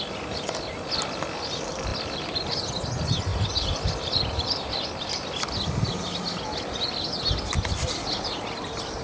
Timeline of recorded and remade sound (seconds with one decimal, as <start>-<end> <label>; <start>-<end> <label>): 0.0-1.9 recorded; 1.9-2.7 remade; 2.7-3.3 recorded; 3.3-4.9 remade; 4.9-9.0 recorded

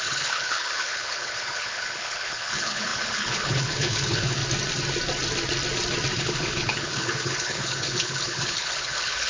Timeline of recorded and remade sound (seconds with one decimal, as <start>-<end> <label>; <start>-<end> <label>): 0.0-4.4 remade; 4.4-6.2 recorded; 6.2-9.3 remade

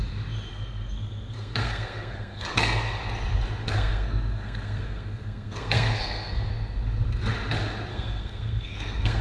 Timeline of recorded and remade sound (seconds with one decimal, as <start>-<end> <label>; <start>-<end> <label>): 0.0-0.5 recorded; 0.5-3.0 remade; 3.0-3.6 recorded; 3.6-6.5 remade; 6.5-7.9 recorded; 7.9-9.2 remade

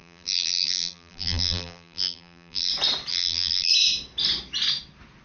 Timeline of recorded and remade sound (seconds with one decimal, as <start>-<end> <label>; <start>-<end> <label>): 0.0-2.7 remade; 2.7-3.1 recorded; 3.1-3.7 remade; 3.7-5.2 recorded

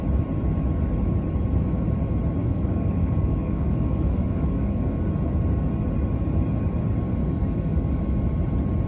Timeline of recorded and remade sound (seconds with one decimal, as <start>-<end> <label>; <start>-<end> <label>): 0.0-2.4 recorded; 2.4-5.0 remade; 5.0-7.2 recorded; 7.2-8.0 remade; 8.0-8.9 recorded

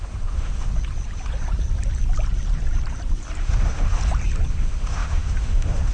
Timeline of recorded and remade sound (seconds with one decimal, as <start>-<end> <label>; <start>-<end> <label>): 0.0-0.7 remade; 0.7-3.4 recorded; 3.4-4.0 remade; 4.0-4.5 recorded; 4.5-5.9 remade

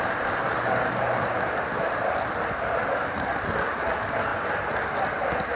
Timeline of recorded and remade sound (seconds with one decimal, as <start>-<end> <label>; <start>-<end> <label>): 0.0-0.5 recorded; 0.5-3.5 remade; 3.5-5.5 recorded

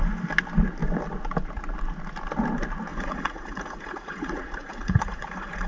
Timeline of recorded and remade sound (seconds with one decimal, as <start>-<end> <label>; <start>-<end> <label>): 0.0-2.9 recorded; 2.9-5.7 remade